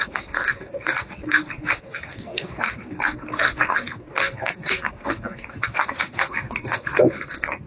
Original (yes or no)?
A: no